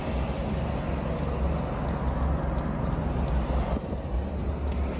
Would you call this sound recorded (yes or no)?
yes